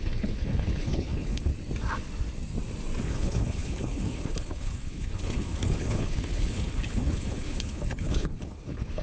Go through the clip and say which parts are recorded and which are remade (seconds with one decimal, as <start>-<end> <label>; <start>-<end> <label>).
0.0-1.5 remade; 1.5-3.0 recorded; 3.0-9.0 remade